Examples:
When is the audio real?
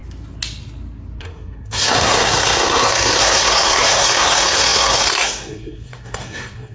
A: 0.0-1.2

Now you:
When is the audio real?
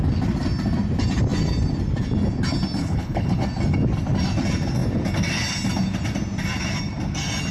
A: 0.0-2.8; 3.4-7.5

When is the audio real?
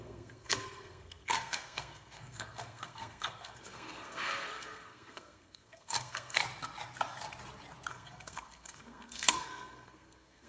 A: 6.4-7.9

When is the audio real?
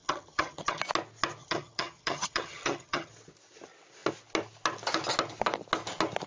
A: 0.8-1.4; 3.1-6.3